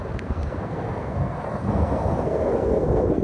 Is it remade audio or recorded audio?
remade